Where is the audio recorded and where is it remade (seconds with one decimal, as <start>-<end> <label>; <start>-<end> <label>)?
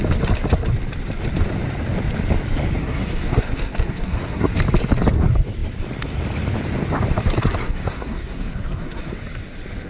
0.0-2.8 recorded; 2.8-4.5 remade; 4.5-7.6 recorded; 7.6-9.0 remade; 9.0-9.9 recorded